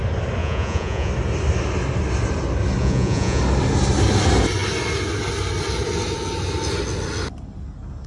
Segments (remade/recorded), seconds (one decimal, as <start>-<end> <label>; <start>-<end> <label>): 0.0-0.4 recorded; 0.4-1.1 remade; 1.1-2.8 recorded; 2.8-3.4 remade; 3.4-8.1 recorded